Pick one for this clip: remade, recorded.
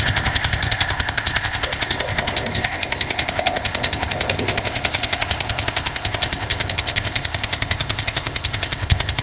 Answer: remade